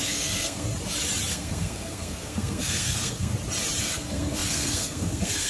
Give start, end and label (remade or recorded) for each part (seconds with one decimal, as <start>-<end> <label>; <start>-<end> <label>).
0.0-0.7 remade; 0.7-1.3 recorded; 1.3-3.3 remade; 3.3-3.8 recorded; 3.8-5.5 remade